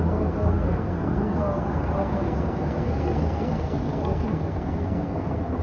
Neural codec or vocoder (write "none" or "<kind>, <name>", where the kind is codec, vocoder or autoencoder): codec, SNAC